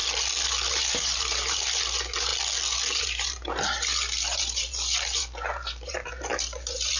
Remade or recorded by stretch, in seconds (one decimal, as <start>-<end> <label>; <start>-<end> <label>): 0.0-0.7 recorded; 0.7-2.3 remade; 2.3-3.0 recorded; 3.0-7.0 remade